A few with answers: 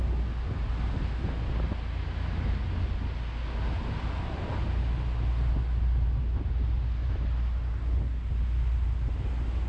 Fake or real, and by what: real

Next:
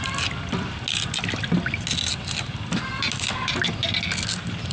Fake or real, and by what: real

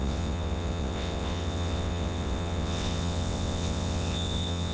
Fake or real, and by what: fake, vocoder, WaveNeXt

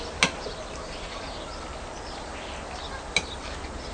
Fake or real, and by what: real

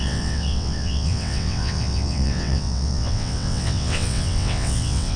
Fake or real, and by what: fake, vocoder, WaveNeXt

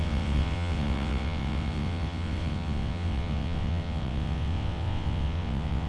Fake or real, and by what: fake, vocoder, WaveNeXt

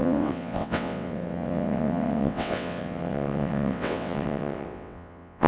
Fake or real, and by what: fake, vocoder, WaveNeXt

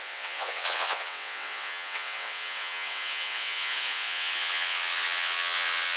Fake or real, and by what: fake, vocoder, WaveNeXt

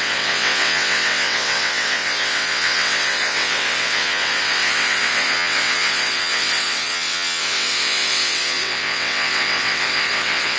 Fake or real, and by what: fake, vocoder, WaveNeXt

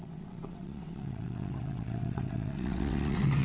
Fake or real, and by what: fake, vocoder, WaveNeXt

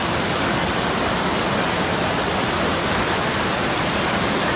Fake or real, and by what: real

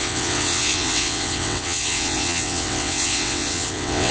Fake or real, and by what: fake, vocoder, WaveNeXt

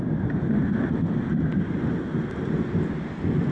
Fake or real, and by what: real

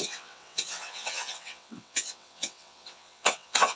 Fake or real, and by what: fake, vocoder, WaveNeXt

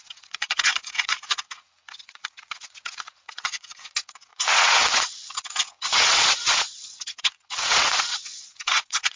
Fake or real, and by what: fake, vocoder, WaveNeXt